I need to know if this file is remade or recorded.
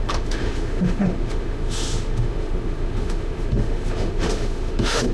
remade